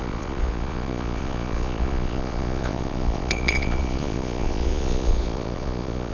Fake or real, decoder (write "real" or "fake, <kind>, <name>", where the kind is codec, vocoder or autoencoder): fake, vocoder, Vocos